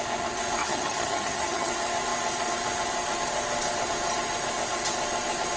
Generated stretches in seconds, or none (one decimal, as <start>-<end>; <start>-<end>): 0.6-1.7

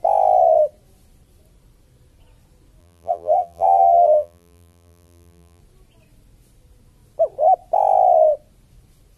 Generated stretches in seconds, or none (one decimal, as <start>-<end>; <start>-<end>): 2.8-5.6